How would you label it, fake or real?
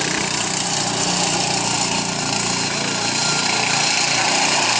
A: real